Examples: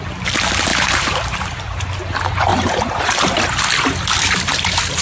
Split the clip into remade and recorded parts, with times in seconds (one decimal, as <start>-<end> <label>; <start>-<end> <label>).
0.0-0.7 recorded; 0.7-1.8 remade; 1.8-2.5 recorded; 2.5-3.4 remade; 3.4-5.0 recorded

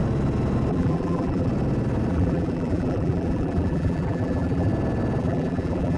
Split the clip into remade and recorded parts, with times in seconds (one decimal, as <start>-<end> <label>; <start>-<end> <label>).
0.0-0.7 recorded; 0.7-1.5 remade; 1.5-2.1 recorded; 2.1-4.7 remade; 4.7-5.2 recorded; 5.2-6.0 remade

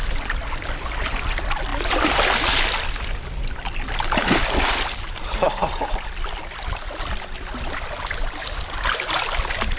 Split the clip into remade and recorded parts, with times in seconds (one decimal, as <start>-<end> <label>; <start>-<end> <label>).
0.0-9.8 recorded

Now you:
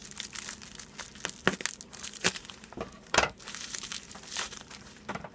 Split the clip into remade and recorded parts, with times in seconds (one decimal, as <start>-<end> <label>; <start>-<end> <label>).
0.0-1.9 recorded; 1.9-5.3 remade